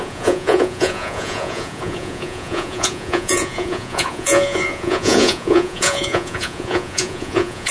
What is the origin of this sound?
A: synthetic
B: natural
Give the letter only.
A